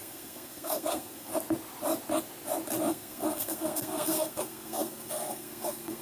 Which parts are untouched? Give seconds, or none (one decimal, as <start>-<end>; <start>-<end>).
1.3-2.9